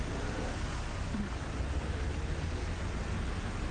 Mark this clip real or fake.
real